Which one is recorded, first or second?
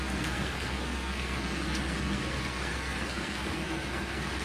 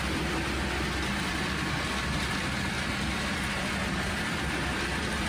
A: second